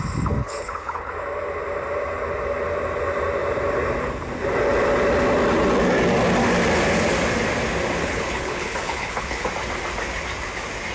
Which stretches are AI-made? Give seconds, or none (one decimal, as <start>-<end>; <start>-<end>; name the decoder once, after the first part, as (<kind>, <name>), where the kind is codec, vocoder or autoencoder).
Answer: 0.4-1.1 (codec, HILCodec); 8.0-9.5